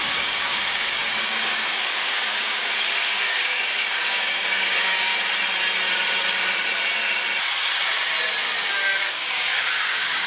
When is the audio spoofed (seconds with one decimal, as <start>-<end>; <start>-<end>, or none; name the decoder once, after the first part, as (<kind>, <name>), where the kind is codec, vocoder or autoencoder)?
0.0-5.1 (codec, DAC); 9.1-10.3